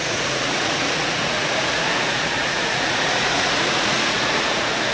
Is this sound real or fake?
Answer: fake